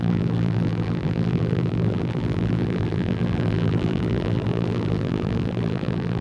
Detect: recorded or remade remade